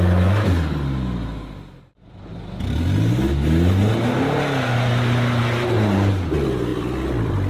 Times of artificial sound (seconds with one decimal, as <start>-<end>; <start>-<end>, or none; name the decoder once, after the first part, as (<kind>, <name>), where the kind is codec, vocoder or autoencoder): 6.7-7.5 (vocoder, BigVGAN v2)